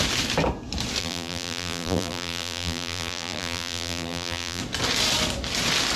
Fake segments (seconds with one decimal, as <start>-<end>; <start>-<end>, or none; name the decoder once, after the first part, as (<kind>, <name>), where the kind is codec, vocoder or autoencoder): 1.0-4.6 (vocoder, BigVGAN v2)